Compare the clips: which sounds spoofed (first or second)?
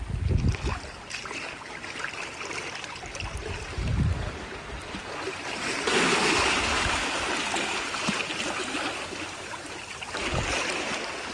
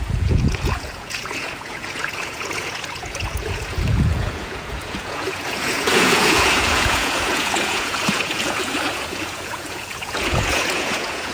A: second